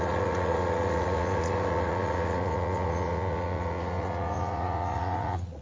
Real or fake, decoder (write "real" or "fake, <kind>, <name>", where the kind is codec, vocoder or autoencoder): fake, vocoder, Vocos